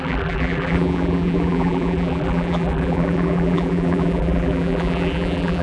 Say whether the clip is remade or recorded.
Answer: remade